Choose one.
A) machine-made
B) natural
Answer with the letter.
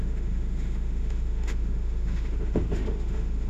A